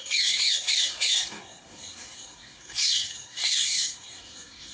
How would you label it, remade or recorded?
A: remade